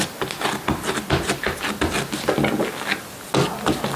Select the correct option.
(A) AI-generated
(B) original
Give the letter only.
B